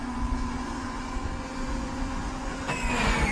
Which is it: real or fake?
fake